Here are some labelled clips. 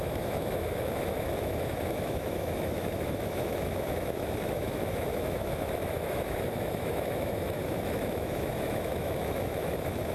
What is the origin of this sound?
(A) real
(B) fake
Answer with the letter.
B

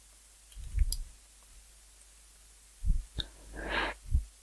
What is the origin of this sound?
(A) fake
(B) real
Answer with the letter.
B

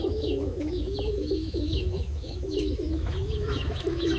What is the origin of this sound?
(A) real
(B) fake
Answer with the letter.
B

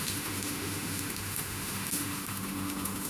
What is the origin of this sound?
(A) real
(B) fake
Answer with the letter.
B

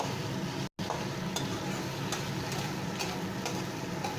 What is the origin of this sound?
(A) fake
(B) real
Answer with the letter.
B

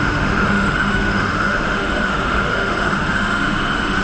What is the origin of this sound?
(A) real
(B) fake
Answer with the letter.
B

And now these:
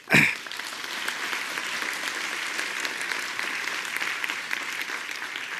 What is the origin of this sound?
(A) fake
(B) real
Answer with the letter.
B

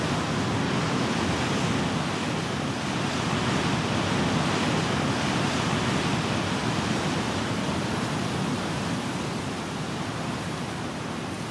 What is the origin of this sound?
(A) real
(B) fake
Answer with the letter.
A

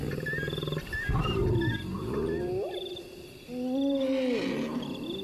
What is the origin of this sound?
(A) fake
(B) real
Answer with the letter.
B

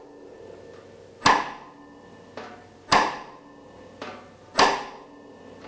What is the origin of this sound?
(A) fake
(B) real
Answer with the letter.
B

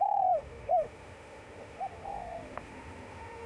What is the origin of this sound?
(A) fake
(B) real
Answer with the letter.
A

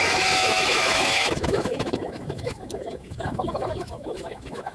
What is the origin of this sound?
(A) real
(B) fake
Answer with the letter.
B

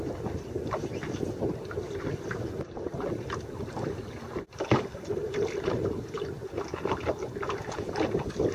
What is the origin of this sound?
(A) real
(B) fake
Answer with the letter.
A